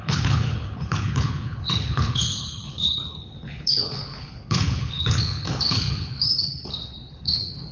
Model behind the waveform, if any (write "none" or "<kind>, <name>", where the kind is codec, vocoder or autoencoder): codec, HILCodec